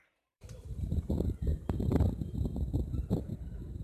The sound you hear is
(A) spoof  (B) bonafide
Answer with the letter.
A